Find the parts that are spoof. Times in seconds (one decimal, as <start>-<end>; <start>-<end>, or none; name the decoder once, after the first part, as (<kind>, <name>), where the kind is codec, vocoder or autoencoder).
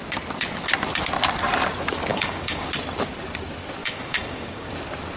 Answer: 2.1-2.7 (codec, DAC); 3.8-4.7